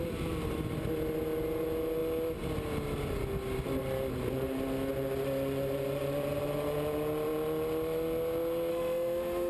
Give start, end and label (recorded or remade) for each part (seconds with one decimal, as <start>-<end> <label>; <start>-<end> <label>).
0.0-8.7 recorded; 8.7-9.5 remade